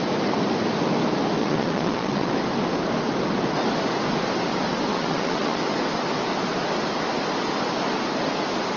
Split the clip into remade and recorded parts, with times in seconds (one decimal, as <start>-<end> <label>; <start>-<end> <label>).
0.0-1.4 recorded; 1.4-2.3 remade; 2.3-4.9 recorded; 4.9-5.6 remade; 5.6-8.8 recorded